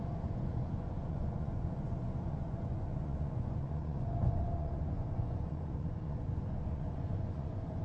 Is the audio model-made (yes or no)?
yes